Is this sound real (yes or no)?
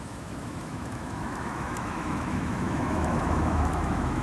no